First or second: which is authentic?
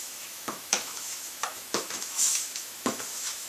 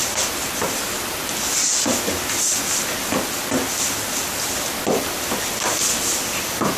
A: second